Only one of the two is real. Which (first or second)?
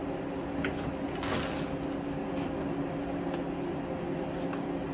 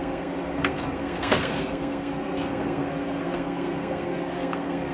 first